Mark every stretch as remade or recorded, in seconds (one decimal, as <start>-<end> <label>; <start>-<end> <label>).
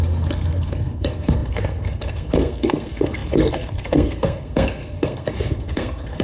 0.0-6.2 remade